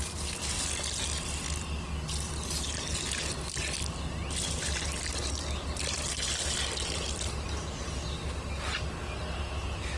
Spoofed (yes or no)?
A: no